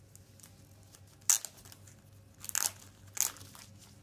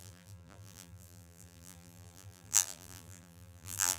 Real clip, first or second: first